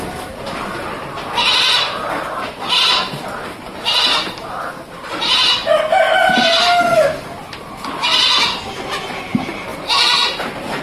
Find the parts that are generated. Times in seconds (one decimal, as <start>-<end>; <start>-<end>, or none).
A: none